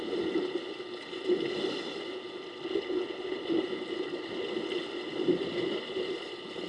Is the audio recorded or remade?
recorded